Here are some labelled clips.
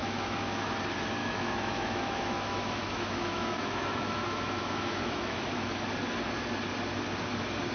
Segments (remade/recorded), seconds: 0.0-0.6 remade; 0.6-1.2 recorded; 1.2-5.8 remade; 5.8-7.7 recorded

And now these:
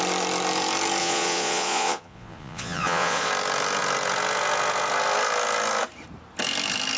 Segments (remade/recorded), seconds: 0.0-1.0 recorded; 1.0-3.3 remade; 3.3-7.0 recorded

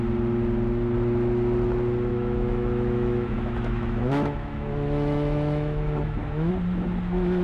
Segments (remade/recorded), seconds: 0.0-2.1 recorded; 2.1-6.5 remade; 6.5-7.4 recorded

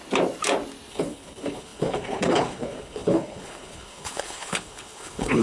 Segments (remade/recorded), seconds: 0.0-0.9 recorded; 0.9-5.4 remade

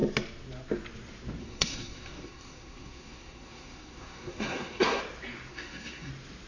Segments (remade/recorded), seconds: 0.0-1.4 recorded; 1.4-5.0 remade; 5.0-5.5 recorded; 5.5-6.1 remade; 6.1-6.5 recorded

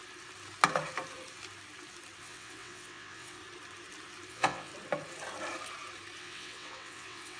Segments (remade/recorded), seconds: 0.0-2.2 recorded; 2.2-3.4 remade; 3.4-4.3 recorded; 4.3-4.7 remade; 4.7-6.2 recorded; 6.2-7.4 remade

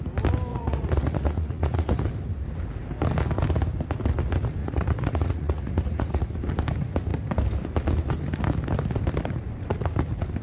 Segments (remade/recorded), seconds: 0.0-0.5 recorded; 0.5-2.0 remade; 2.0-4.6 recorded; 4.6-6.2 remade; 6.2-10.4 recorded